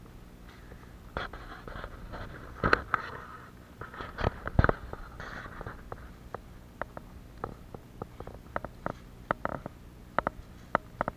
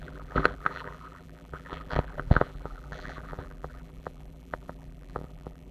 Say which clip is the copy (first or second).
second